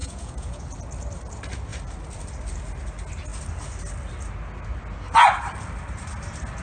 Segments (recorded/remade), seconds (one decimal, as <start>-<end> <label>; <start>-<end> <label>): 0.0-0.6 remade; 0.6-6.6 recorded